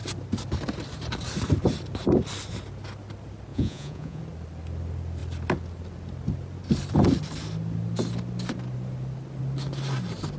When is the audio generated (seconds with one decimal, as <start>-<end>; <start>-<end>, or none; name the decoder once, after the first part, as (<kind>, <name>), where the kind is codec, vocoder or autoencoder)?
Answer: 3.5-4.2 (vocoder, Vocos)